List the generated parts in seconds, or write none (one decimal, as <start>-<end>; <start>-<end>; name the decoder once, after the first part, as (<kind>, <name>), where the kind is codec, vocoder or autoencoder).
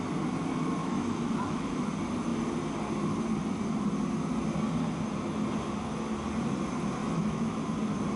0.8-1.9 (autoencoder, DAC-VAE); 7.0-7.6